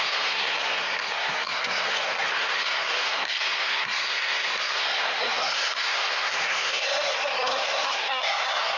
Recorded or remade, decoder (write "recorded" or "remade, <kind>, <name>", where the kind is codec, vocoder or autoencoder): remade, codec, SNAC